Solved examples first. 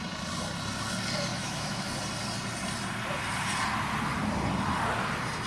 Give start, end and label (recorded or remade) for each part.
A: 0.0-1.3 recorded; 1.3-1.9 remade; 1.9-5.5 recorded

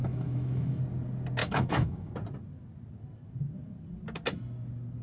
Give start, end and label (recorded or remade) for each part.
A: 0.0-0.8 remade; 0.8-1.4 recorded; 1.4-2.1 remade; 2.1-5.0 recorded

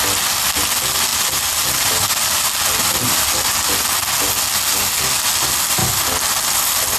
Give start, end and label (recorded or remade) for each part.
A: 0.0-7.0 recorded

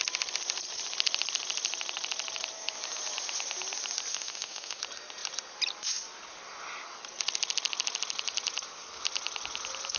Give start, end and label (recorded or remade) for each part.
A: 0.0-4.1 recorded; 4.1-4.8 remade; 4.8-10.0 recorded

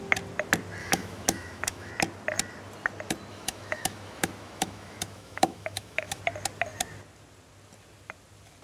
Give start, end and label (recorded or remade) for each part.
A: 0.0-0.8 recorded; 0.8-1.9 remade; 1.9-3.3 recorded; 3.3-6.2 remade; 6.2-8.6 recorded

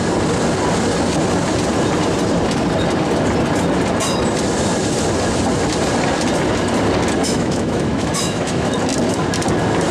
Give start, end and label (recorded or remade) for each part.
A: 0.0-7.2 recorded; 7.2-8.7 remade; 8.7-9.9 recorded

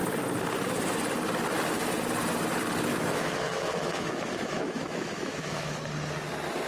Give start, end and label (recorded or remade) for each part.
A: 0.0-2.9 recorded; 2.9-5.8 remade; 5.8-6.7 recorded

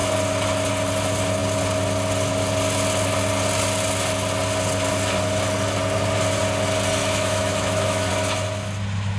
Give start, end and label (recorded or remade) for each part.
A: 0.0-7.0 recorded; 7.0-8.1 remade; 8.1-9.2 recorded